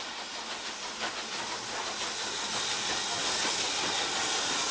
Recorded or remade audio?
recorded